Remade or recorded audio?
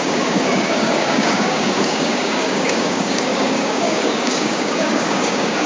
remade